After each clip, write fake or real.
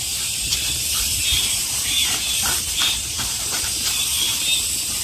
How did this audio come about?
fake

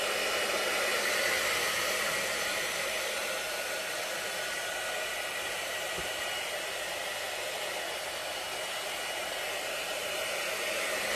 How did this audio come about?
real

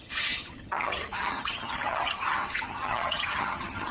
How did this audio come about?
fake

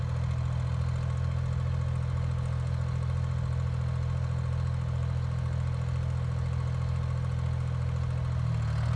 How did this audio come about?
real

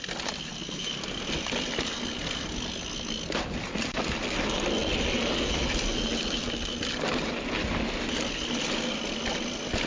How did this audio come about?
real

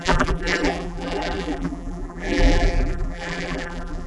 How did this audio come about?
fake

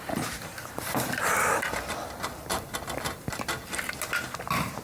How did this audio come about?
real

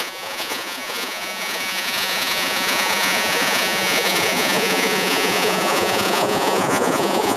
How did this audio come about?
fake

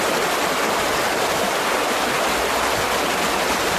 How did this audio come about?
real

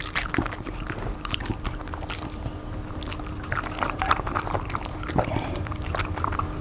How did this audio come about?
real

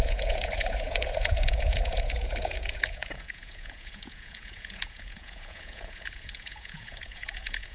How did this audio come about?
fake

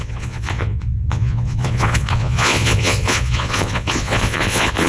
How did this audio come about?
fake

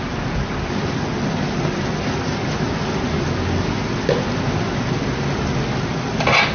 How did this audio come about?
real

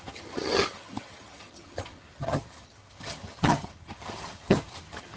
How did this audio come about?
fake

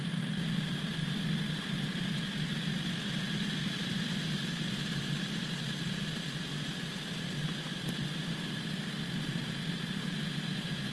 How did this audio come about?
fake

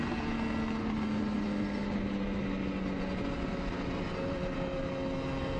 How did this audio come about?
real